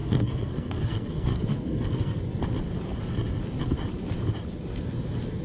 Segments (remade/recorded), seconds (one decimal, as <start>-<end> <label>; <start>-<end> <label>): 0.0-2.2 remade; 2.2-5.4 recorded